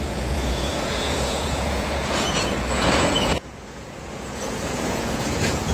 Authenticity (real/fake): fake